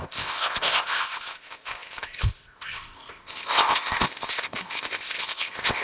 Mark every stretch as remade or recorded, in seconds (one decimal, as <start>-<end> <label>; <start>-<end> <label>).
0.0-5.8 remade